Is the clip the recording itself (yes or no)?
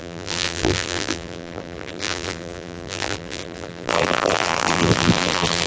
no